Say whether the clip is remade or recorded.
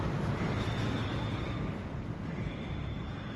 remade